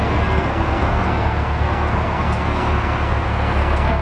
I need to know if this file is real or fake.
fake